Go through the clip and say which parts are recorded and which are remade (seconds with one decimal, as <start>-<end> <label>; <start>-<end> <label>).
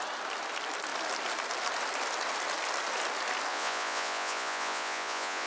0.0-3.5 recorded; 3.5-5.5 remade